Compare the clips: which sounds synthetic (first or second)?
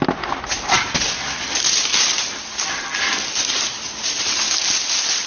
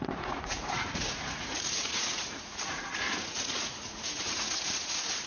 second